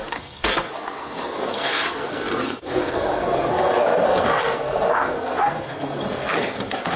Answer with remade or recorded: remade